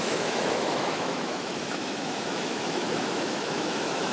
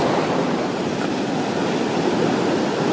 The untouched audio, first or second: second